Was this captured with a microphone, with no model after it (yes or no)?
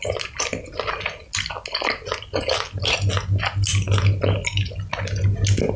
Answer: yes